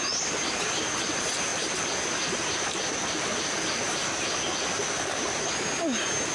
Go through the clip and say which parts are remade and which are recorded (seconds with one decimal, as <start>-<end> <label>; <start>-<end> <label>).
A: 0.0-6.3 recorded